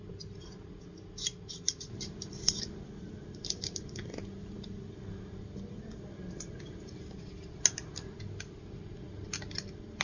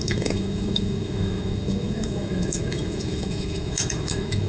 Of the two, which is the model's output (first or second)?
second